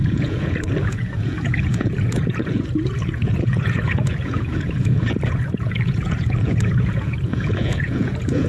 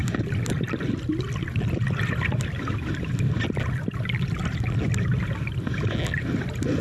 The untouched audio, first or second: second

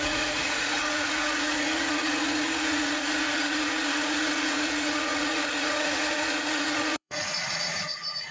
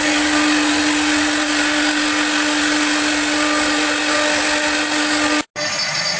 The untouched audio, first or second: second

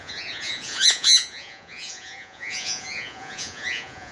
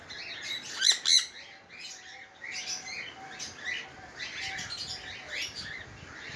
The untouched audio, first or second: second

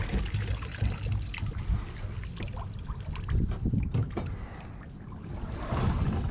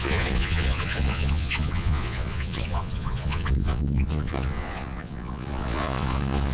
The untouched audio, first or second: first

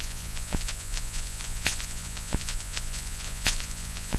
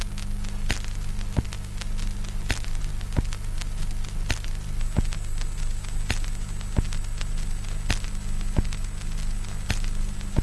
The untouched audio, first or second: second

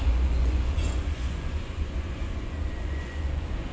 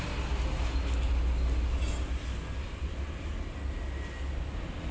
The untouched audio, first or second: second